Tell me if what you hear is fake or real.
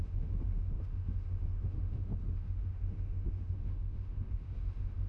fake